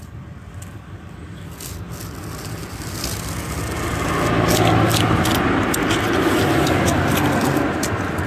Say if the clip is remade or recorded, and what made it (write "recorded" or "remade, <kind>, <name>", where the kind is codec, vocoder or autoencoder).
recorded